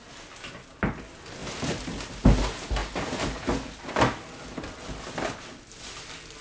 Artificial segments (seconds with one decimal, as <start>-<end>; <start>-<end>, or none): none